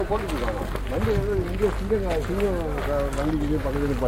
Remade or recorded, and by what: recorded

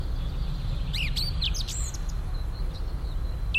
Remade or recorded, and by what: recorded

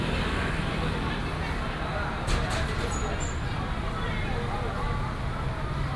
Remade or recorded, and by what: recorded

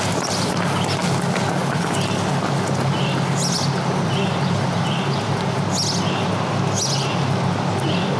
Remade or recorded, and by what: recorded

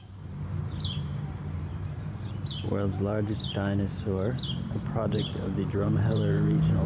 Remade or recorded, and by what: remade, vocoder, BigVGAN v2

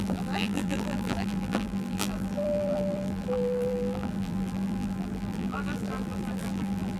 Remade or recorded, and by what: remade, vocoder, BigVGAN v2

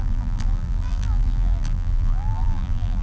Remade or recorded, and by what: remade, vocoder, BigVGAN v2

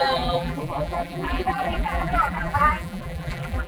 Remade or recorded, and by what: remade, vocoder, BigVGAN v2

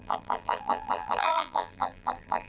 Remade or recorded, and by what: remade, vocoder, BigVGAN v2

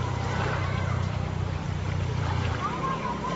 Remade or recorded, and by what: remade, vocoder, BigVGAN v2